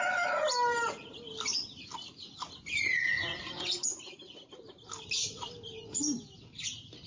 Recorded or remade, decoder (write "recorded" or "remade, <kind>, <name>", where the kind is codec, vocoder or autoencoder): recorded